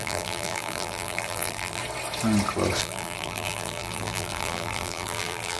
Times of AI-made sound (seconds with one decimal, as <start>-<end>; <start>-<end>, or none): 0.0-1.8; 2.8-5.6